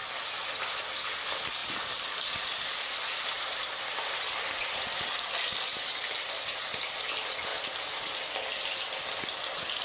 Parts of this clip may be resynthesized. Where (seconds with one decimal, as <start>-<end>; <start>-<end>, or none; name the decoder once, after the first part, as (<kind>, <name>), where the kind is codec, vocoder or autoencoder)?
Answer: 1.6-3.9 (vocoder, BigVGAN v2)